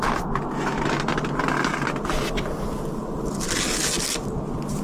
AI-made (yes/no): no